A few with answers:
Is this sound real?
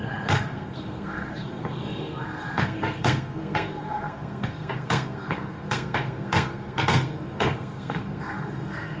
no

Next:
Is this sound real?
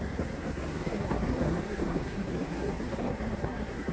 no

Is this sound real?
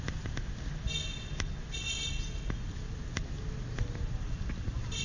yes